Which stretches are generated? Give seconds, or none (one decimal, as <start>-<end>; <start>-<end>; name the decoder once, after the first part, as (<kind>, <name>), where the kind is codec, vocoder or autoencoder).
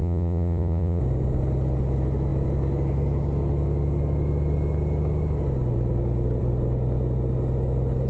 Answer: 0.0-1.0 (vocoder, Vocos)